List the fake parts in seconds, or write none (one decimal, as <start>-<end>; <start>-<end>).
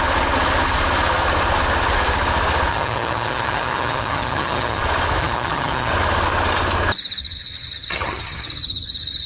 2.7-4.8; 5.2-5.9; 7.2-9.3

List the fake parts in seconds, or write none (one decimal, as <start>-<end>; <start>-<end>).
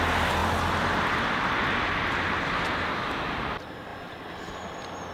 none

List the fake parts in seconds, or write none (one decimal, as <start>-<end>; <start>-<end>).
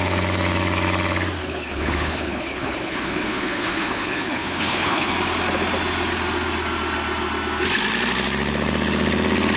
1.4-5.1